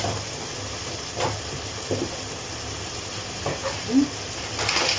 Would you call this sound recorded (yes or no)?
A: yes